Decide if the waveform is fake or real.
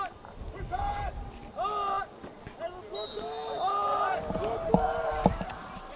real